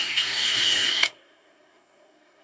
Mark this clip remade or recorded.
remade